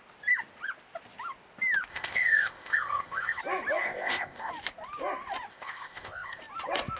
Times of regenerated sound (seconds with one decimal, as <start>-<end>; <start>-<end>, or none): 1.9-3.4; 3.8-4.5; 5.5-6.4